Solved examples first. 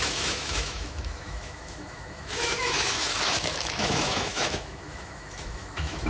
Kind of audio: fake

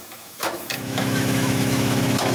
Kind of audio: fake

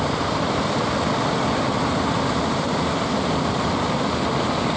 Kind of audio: real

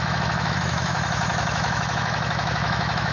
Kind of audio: fake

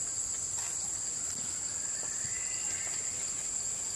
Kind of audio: real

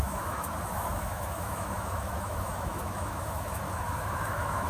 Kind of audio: fake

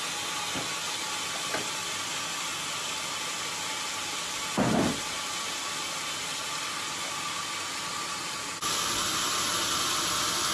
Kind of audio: real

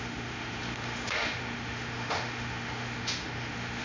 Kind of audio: fake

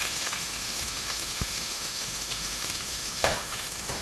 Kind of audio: fake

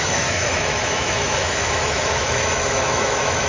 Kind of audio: fake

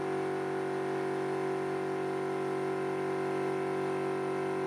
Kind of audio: real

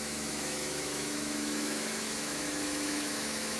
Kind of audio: fake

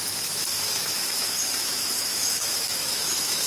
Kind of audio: fake